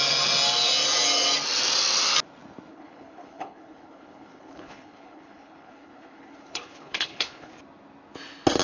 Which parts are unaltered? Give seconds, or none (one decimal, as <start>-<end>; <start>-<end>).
0.0-2.7; 7.5-8.6

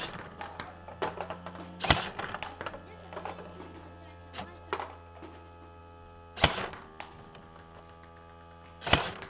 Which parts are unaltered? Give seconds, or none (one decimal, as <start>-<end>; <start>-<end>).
0.0-9.3

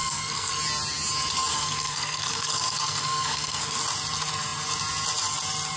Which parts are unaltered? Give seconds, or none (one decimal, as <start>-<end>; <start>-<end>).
0.6-1.5; 3.8-5.8

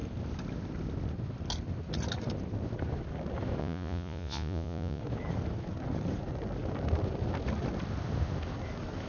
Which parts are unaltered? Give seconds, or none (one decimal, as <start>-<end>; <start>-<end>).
0.0-3.6; 5.0-9.1

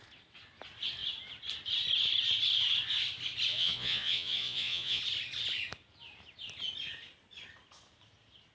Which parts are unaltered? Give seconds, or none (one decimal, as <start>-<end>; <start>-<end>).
0.0-3.5; 5.0-8.5

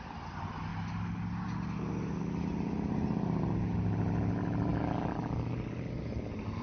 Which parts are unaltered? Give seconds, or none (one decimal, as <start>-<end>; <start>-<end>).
0.0-6.6